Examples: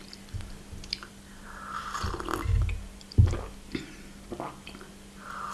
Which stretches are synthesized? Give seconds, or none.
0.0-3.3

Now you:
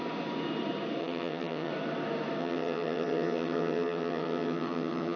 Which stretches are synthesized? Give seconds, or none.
1.0-1.7; 2.4-5.2

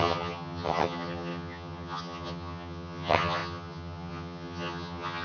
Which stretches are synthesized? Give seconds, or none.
0.0-5.2

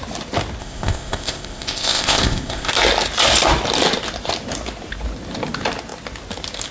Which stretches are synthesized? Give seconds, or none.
0.6-2.7

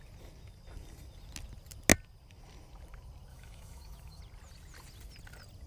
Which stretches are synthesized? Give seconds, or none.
3.3-4.2